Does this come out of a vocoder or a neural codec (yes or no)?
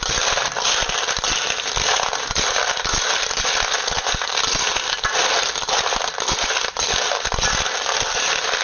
no